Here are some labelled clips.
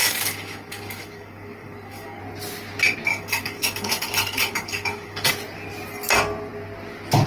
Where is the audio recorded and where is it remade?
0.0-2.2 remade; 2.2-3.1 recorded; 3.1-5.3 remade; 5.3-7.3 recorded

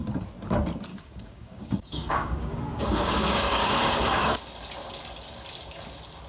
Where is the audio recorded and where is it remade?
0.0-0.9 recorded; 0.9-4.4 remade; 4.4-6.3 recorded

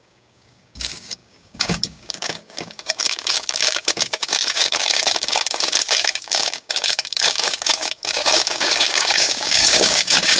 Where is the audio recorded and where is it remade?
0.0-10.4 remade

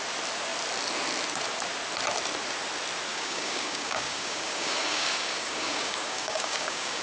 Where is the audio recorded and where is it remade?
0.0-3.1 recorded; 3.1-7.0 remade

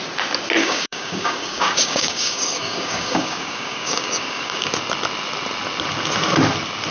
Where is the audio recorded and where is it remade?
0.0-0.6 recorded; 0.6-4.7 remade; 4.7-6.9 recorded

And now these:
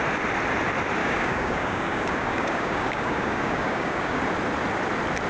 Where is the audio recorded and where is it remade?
0.0-1.0 recorded; 1.0-4.2 remade; 4.2-5.3 recorded

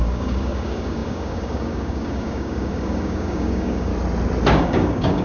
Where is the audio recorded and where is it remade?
0.0-3.9 remade; 3.9-4.5 recorded; 4.5-5.2 remade